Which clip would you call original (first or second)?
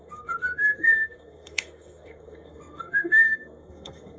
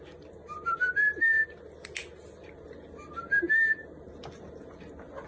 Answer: second